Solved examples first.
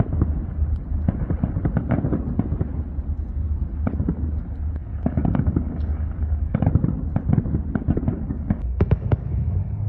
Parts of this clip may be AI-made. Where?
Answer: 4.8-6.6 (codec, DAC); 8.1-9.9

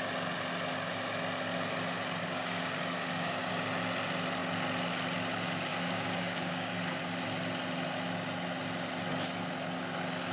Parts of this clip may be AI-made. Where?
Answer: 2.2-3.5 (codec, DAC); 5.7-7.0

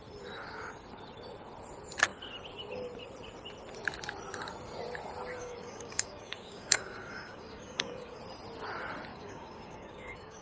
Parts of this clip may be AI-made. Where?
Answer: 5.4-8.2 (codec, DAC); 9.1-10.4

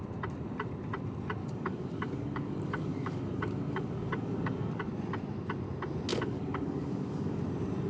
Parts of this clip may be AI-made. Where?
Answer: 1.4-4.8 (codec, DAC); 6.1-7.4

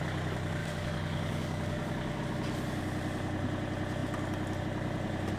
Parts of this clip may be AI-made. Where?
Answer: 0.6-2.2 (codec, DAC)